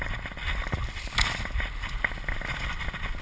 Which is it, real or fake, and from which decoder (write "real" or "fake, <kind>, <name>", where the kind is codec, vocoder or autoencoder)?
real